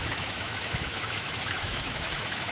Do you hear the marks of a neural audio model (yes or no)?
yes